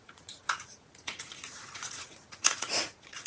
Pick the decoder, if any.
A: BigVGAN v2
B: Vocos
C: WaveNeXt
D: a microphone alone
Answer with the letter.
B